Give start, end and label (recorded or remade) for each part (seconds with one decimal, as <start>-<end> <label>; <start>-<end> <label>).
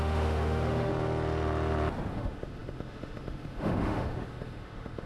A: 0.0-0.9 remade; 0.9-2.1 recorded; 2.1-5.1 remade